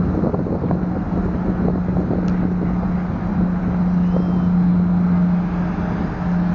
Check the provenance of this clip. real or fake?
real